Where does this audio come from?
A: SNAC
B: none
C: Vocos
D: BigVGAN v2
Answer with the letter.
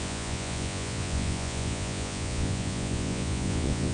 C